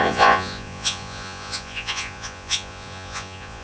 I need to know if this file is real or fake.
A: fake